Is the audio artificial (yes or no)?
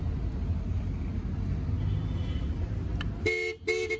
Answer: no